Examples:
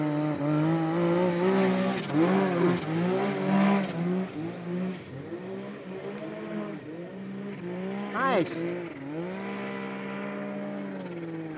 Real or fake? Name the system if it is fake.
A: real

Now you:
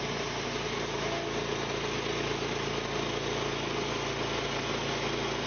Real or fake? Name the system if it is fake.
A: real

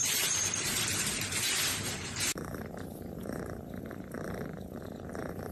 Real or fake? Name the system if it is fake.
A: fake, vocoder, BigVGAN v2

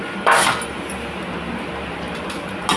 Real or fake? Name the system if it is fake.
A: real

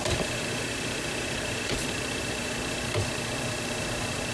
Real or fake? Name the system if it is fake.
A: fake, vocoder, BigVGAN v2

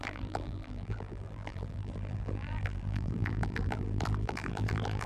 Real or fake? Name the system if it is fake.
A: fake, vocoder, BigVGAN v2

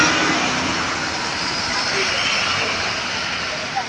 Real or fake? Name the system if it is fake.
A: real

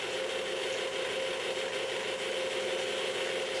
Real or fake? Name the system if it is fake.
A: real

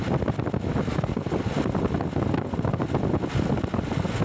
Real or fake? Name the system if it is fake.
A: real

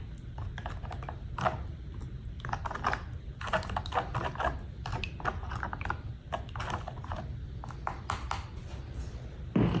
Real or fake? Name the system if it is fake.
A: real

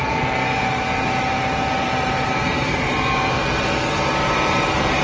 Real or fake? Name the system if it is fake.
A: fake, vocoder, BigVGAN v2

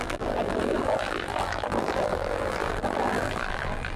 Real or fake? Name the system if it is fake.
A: fake, vocoder, BigVGAN v2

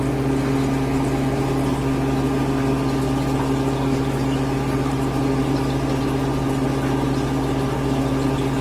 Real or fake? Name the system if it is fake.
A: real